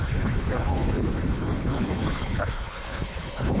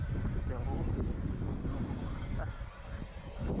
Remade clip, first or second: first